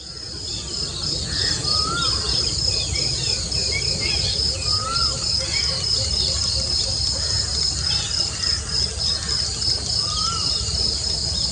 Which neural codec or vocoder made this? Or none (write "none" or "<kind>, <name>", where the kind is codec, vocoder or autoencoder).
none